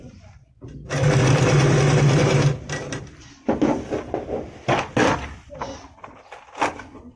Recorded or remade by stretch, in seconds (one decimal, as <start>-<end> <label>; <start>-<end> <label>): 0.0-7.2 recorded